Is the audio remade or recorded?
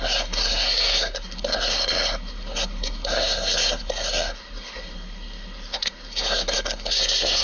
remade